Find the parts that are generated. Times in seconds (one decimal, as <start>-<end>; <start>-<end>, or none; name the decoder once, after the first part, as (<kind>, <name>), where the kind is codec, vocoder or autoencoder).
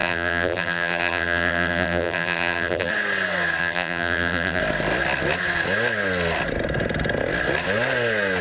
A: 0.0-2.9 (vocoder, BigVGAN v2); 3.6-4.6